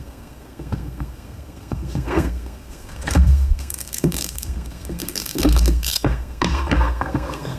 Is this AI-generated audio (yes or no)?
yes